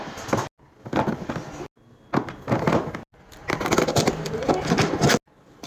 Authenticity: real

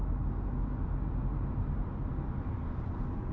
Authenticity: real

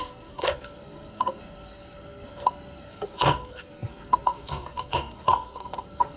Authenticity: fake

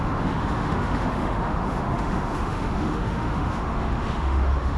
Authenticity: fake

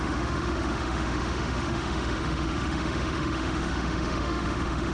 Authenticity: fake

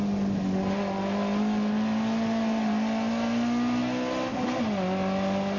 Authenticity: real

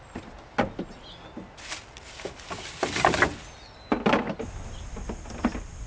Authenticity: real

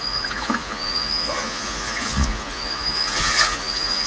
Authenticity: fake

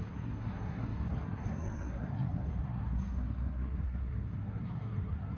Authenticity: fake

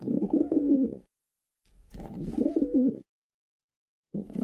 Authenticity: fake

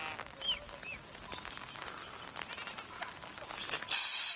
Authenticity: real